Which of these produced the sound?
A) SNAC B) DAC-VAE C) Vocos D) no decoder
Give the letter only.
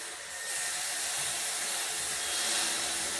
D